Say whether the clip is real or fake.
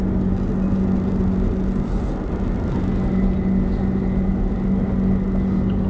real